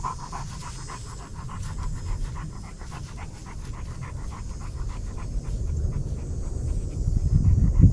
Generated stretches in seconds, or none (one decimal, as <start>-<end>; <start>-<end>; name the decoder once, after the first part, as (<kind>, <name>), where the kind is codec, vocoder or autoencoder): none